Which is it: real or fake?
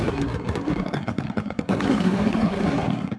fake